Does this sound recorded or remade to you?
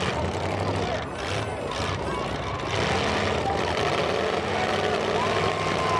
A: recorded